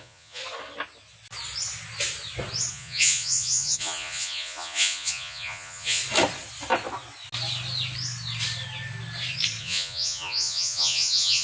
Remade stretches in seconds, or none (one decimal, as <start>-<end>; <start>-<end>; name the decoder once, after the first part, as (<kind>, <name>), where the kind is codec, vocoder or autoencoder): 0.0-0.4 (vocoder, Vocos); 2.7-6.0; 9.6-11.4